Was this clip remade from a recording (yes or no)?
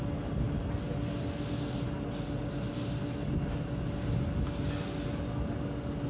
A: no